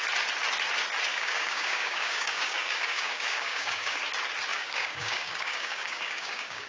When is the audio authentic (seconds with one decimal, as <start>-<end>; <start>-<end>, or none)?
0.0-1.1; 4.0-4.5